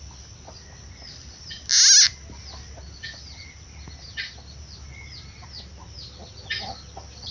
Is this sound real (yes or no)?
yes